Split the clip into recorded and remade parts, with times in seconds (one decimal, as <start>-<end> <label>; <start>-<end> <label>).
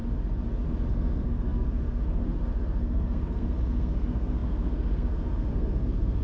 0.0-0.9 recorded; 0.9-6.2 remade